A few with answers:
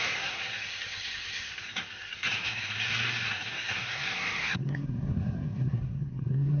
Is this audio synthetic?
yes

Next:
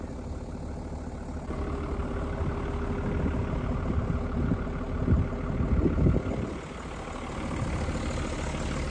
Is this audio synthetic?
no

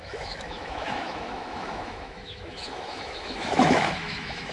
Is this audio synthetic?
yes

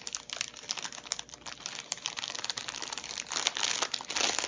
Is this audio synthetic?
no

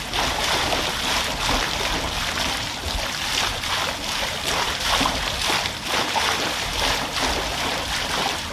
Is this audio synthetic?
no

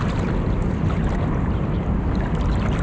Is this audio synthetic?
no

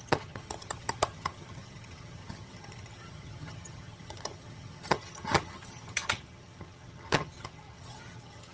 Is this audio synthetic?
yes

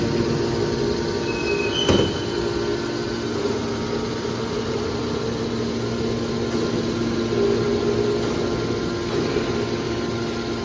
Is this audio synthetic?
no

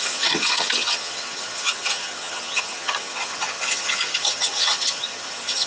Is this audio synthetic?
yes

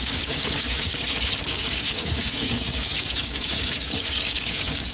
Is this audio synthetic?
yes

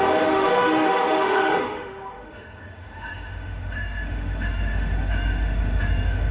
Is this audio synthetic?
yes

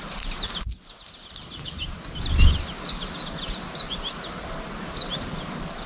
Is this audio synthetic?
no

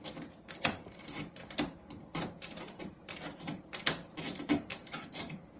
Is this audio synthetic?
yes